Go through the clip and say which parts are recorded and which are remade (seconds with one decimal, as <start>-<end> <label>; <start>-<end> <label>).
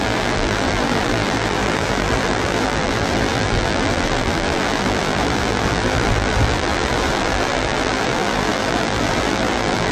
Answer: 0.0-9.9 remade